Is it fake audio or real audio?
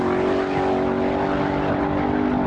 real